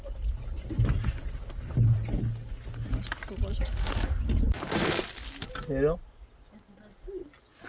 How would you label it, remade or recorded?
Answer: recorded